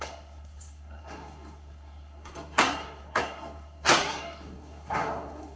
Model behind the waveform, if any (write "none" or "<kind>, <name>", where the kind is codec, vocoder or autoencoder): codec, SNAC